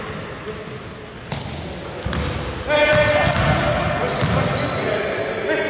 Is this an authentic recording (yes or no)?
yes